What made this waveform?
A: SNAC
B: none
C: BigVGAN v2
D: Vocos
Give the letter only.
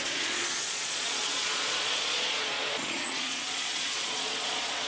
D